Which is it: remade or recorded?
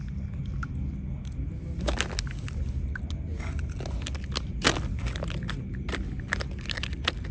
recorded